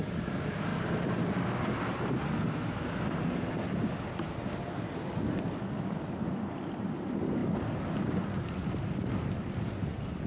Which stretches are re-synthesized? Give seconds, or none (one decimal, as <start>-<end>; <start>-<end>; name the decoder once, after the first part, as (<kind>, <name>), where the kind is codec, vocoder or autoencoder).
none

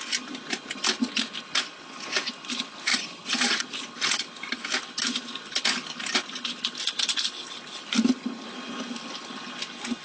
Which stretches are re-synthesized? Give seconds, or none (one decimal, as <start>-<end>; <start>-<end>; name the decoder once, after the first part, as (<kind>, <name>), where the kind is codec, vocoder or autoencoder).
2.9-3.6 (vocoder, HiFi-GAN)